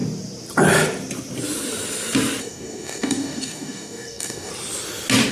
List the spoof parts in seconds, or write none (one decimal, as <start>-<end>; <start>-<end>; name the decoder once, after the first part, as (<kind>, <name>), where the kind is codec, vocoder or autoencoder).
2.4-4.5 (codec, DAC)